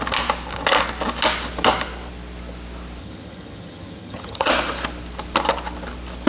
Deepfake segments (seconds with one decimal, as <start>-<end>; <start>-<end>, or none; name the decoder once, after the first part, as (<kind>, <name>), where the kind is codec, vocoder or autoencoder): 3.0-4.5 (vocoder, HiFi-GAN)